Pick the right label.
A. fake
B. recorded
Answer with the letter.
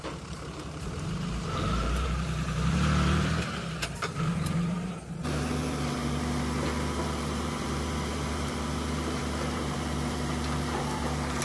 A